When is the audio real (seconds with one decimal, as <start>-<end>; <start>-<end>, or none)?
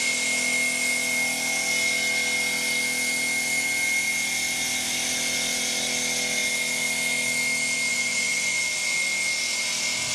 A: 0.0-7.9; 8.6-10.1